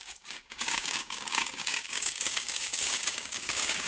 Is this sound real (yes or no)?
no